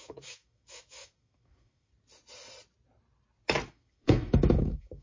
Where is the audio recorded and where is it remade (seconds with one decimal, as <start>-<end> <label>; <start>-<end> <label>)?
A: 0.0-1.9 remade; 1.9-3.7 recorded; 3.7-5.0 remade